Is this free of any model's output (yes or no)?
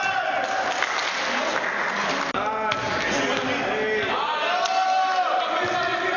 yes